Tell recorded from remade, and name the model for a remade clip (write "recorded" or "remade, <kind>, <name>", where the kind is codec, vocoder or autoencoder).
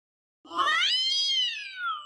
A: recorded